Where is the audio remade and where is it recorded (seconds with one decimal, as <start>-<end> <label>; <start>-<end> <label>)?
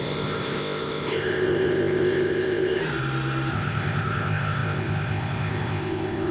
0.0-2.8 remade; 2.8-3.5 recorded; 3.5-6.3 remade